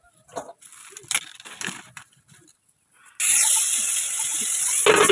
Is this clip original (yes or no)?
yes